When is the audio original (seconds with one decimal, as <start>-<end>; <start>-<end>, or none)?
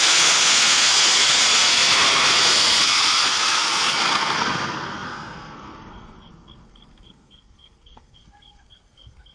none